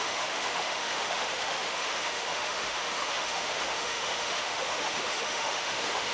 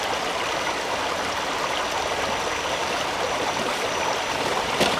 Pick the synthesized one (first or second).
first